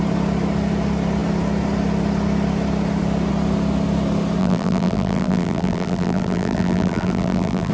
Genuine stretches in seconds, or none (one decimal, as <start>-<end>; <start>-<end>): 0.0-4.4